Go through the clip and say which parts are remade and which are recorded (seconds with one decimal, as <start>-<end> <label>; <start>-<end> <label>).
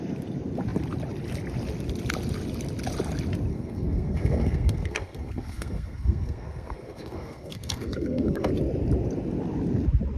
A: 0.0-3.5 recorded; 3.5-8.5 remade; 8.5-10.2 recorded